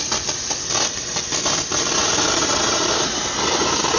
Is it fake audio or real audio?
real